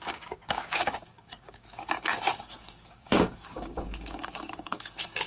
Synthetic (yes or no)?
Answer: yes